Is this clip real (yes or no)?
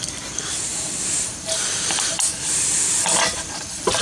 no